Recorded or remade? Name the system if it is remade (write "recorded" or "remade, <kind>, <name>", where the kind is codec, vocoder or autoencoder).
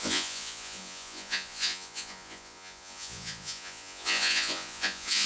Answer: remade, vocoder, Vocos